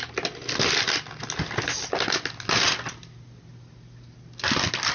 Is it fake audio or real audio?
real